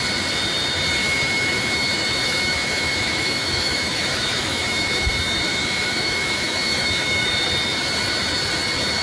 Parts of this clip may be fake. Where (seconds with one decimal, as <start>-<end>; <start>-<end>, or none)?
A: 1.0-5.1; 5.5-7.3